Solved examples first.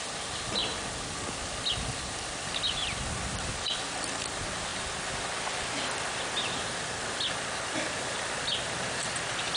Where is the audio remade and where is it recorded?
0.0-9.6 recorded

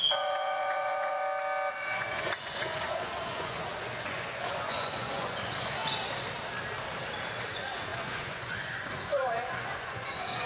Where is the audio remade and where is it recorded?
0.0-1.2 remade; 1.2-1.7 recorded; 1.7-5.8 remade; 5.8-7.4 recorded; 7.4-10.5 remade

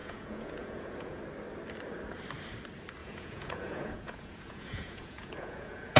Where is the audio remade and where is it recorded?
0.0-1.2 remade; 1.2-3.0 recorded; 3.0-6.0 remade

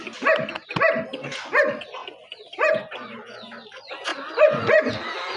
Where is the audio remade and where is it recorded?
0.0-4.1 recorded; 4.1-4.9 remade; 4.9-5.4 recorded

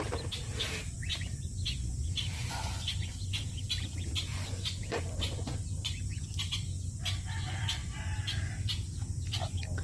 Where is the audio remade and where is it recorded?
0.0-1.1 recorded; 1.1-3.4 remade; 3.4-4.3 recorded; 4.3-8.5 remade; 8.5-9.8 recorded

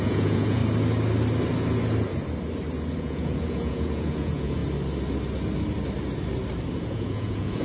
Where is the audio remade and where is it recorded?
0.0-0.6 remade; 0.6-3.0 recorded; 3.0-4.6 remade; 4.6-6.8 recorded; 6.8-7.6 remade

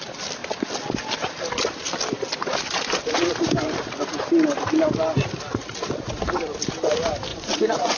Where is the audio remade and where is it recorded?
0.0-7.3 recorded; 7.3-8.0 remade

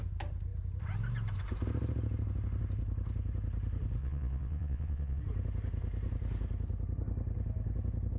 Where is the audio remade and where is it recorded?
0.0-4.0 recorded; 4.0-5.2 remade; 5.2-8.2 recorded